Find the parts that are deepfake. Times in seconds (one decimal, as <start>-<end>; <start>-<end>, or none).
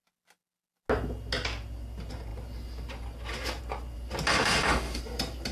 4.3-5.0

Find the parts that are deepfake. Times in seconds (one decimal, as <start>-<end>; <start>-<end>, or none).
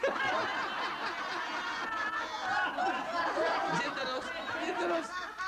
none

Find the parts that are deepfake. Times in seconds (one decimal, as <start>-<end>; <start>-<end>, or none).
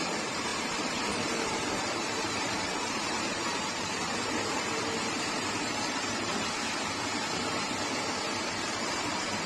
0.0-6.3; 8.5-9.5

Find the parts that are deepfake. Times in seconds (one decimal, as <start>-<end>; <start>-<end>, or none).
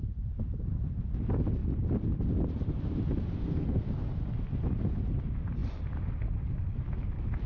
3.4-3.9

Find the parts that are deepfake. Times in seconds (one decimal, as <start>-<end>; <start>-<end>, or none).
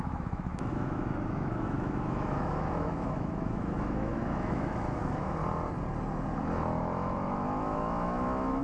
0.0-5.4; 6.8-8.6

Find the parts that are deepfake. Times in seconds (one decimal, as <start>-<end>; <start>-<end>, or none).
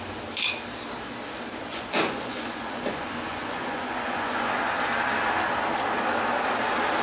1.6-4.5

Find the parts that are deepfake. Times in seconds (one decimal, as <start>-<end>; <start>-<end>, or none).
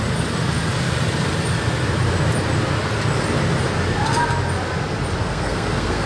5.2-6.1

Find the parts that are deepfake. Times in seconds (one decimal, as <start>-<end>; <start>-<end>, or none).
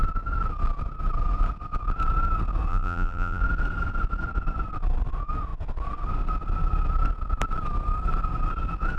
2.7-3.4